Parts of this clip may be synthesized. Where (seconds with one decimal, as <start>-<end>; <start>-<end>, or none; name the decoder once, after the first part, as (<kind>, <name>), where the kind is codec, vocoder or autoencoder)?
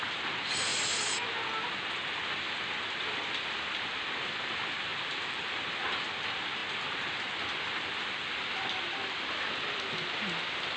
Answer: 0.0-0.7 (vocoder, BigVGAN v2); 2.1-10.8